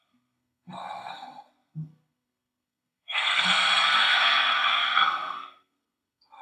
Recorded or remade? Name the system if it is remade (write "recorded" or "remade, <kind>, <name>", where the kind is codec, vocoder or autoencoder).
remade, codec, SNAC